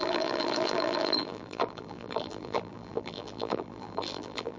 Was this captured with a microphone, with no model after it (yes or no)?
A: no